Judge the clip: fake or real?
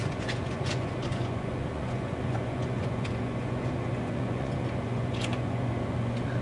fake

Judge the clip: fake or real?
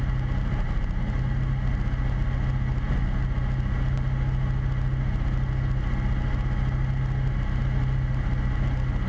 real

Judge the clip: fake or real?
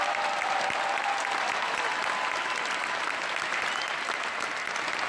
real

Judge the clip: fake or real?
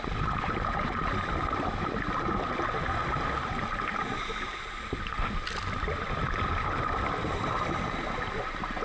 real